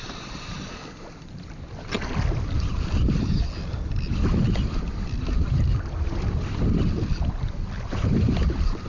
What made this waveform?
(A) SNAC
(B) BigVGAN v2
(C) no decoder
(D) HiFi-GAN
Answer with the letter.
C